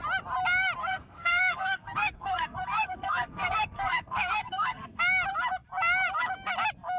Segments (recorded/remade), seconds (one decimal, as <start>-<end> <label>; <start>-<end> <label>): 0.0-0.8 recorded; 0.8-5.0 remade; 5.0-7.0 recorded